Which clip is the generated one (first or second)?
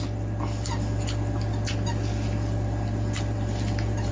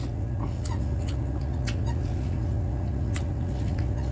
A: second